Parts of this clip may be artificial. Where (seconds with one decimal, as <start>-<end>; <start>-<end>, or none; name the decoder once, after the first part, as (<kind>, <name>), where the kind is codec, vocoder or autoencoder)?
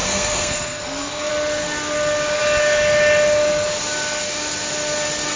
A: 0.0-1.3 (codec, SNAC)